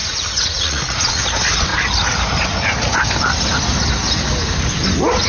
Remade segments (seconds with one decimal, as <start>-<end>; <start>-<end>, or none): 0.0-1.2